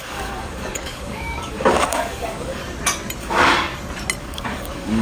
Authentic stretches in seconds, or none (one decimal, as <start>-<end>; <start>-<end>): 2.6-3.2; 3.7-4.2

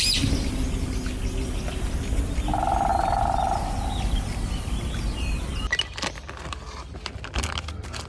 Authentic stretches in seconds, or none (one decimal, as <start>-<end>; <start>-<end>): 0.0-8.1

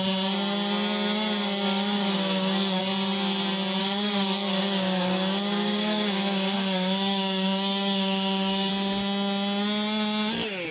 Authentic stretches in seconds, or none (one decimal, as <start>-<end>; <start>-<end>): 0.0-1.4; 2.8-3.8; 8.7-10.7

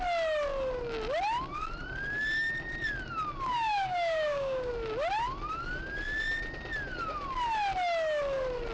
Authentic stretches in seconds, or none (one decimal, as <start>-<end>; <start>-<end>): 0.0-3.5; 4.7-8.7

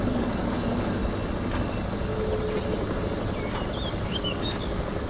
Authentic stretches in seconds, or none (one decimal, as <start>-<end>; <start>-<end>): 1.0-4.1

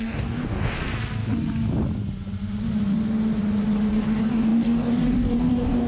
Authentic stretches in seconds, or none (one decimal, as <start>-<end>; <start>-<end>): 0.8-3.9

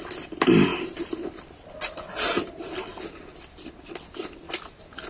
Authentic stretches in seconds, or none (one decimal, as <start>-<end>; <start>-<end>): 0.0-5.1